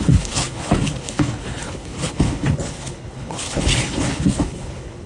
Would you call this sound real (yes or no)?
no